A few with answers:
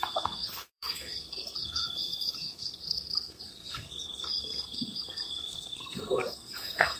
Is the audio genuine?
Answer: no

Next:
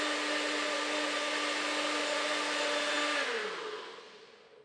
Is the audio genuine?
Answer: yes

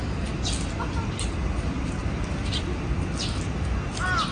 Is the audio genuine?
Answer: yes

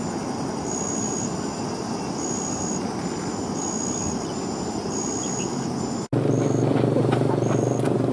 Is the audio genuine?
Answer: yes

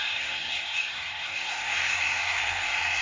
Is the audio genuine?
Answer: no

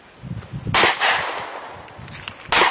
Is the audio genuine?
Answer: yes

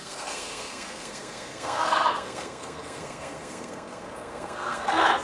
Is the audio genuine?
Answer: no